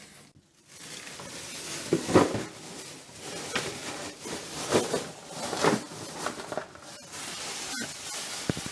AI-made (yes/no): no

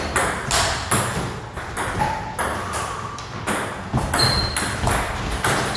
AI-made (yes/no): no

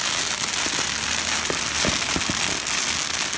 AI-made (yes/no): no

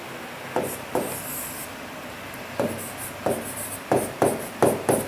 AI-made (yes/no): no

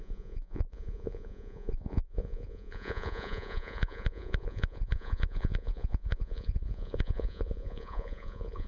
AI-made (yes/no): yes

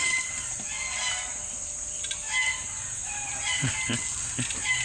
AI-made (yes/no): no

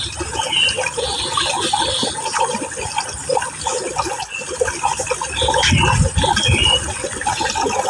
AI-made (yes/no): no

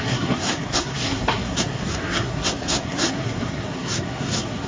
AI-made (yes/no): yes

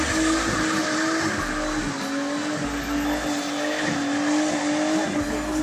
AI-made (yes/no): no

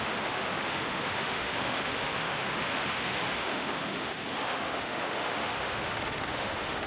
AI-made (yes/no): yes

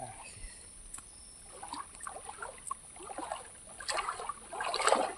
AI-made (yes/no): no